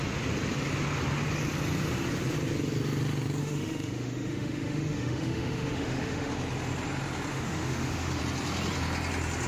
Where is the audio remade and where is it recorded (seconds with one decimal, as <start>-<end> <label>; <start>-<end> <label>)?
0.0-3.4 recorded; 3.4-6.3 remade; 6.3-7.3 recorded; 7.3-8.2 remade; 8.2-9.5 recorded